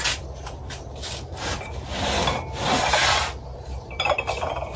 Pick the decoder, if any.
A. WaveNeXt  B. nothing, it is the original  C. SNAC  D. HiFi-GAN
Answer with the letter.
B